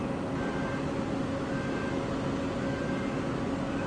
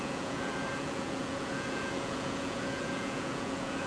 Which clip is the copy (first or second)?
second